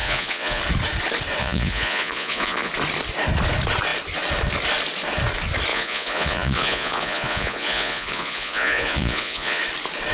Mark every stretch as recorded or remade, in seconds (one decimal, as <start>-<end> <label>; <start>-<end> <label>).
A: 0.0-0.6 remade; 0.6-1.4 recorded; 1.4-2.7 remade; 2.7-5.7 recorded; 5.7-9.6 remade; 9.6-10.1 recorded